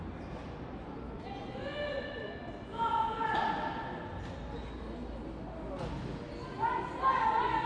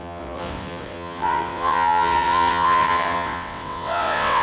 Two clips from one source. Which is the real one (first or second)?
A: first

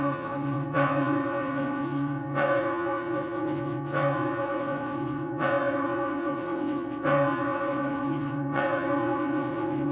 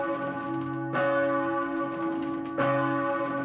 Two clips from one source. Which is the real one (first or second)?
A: second